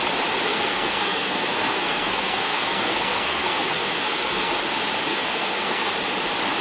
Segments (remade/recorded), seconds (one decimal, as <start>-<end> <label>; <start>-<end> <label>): 0.0-0.5 recorded; 0.5-4.5 remade; 4.5-5.1 recorded; 5.1-5.9 remade; 5.9-6.6 recorded